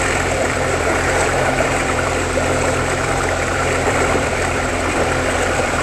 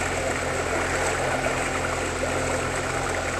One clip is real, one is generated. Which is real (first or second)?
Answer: second